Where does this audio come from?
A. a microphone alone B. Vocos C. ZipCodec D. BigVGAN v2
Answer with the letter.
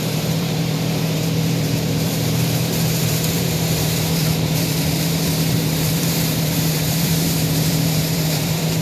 D